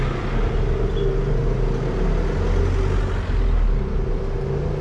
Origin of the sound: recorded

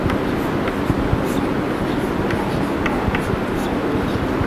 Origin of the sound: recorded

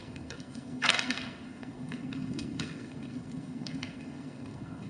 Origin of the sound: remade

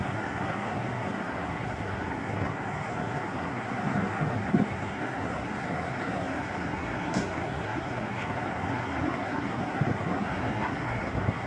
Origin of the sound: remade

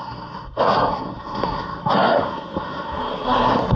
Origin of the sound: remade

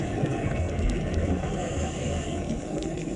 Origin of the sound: remade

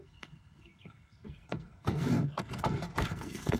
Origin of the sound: remade